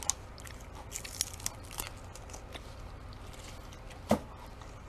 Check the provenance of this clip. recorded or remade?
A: recorded